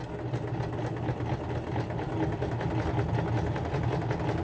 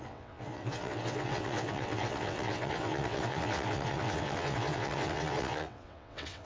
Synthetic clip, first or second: second